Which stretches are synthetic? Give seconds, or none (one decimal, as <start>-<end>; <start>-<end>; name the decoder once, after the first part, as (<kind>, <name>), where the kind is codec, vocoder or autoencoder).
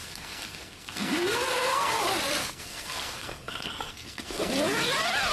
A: 0.0-2.0 (codec, SNAC); 2.4-4.5